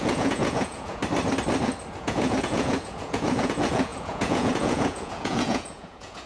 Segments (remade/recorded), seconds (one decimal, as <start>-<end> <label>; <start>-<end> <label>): 0.0-1.0 remade; 1.0-2.0 recorded; 2.0-6.3 remade